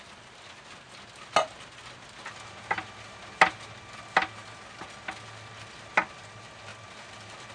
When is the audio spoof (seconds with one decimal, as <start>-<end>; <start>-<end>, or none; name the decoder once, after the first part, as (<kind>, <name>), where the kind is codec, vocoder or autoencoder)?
none